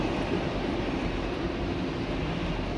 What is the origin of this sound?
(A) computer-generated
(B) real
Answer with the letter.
B